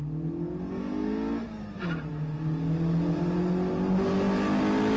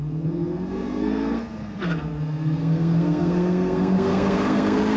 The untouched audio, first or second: first